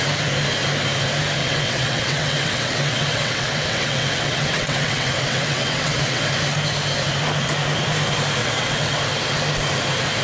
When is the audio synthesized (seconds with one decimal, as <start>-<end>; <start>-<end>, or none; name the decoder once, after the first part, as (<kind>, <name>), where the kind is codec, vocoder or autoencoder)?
1.4-6.2 (vocoder, WaveNeXt); 8.4-9.0